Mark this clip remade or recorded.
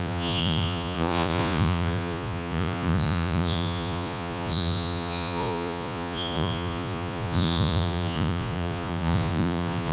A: remade